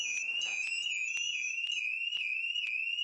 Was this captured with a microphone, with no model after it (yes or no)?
yes